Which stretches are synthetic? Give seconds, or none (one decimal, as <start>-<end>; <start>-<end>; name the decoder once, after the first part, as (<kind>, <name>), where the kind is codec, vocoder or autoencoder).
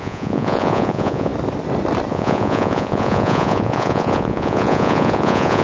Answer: 0.0-1.3 (vocoder, Vocos); 2.1-5.6